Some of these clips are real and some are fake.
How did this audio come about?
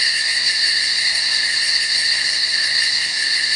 fake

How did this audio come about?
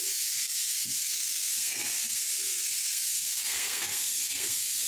fake